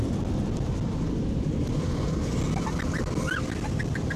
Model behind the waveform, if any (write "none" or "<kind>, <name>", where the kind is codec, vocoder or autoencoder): vocoder, BigVGAN v2